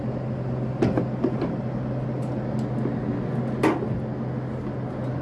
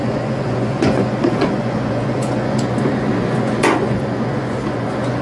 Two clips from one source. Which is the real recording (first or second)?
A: first